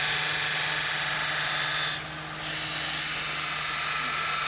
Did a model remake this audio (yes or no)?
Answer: no